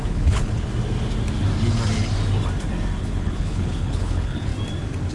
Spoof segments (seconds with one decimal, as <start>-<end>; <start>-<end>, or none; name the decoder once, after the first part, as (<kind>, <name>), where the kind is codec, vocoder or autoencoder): 0.0-0.7 (codec, HILCodec); 3.0-4.5